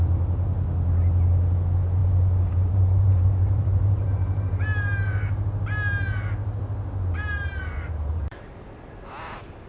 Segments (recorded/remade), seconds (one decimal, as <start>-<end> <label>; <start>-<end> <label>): 0.0-2.0 recorded; 2.0-4.1 remade; 4.1-7.3 recorded; 7.3-8.8 remade; 8.8-9.7 recorded